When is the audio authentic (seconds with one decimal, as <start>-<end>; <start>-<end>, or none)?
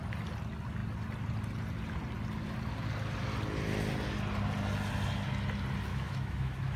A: 0.0-5.9